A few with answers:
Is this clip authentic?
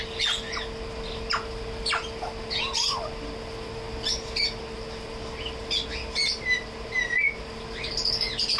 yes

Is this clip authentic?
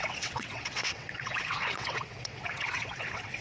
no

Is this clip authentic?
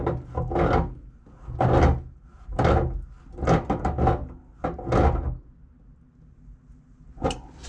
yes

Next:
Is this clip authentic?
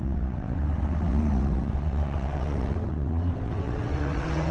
no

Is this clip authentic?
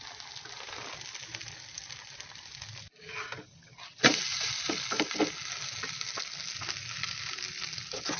yes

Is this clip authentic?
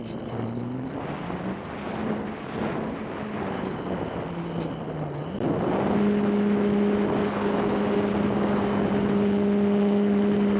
yes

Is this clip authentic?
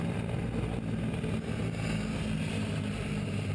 yes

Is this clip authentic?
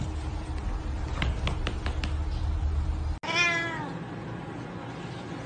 yes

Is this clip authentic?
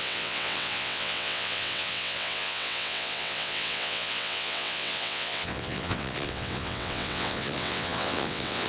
no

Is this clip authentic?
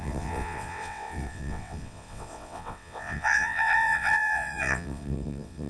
no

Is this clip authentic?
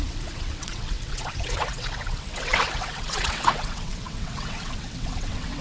no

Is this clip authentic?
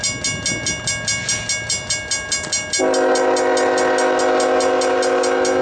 yes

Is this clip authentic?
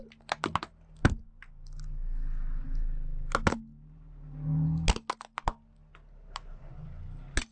yes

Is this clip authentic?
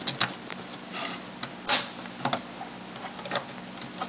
yes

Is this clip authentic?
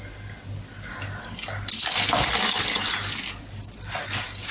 yes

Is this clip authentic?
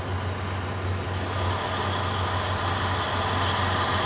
yes